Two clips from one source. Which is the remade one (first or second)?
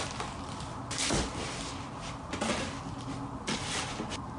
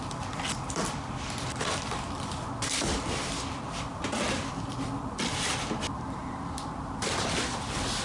second